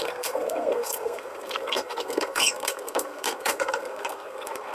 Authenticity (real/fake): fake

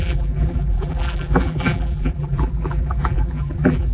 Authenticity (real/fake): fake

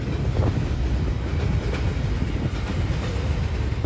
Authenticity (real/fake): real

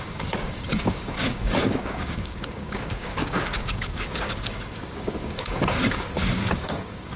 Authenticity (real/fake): fake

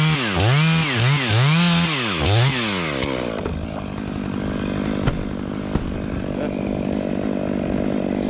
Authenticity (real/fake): real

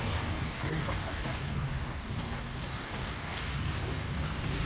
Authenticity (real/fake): fake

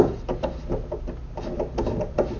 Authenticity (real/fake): real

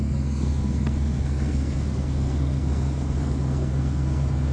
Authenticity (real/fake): fake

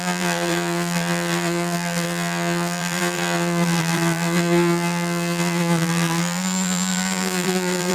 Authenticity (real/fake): fake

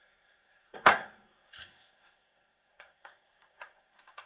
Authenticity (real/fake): fake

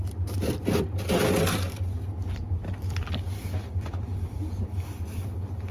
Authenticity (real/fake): real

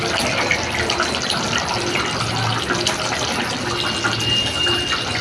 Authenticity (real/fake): real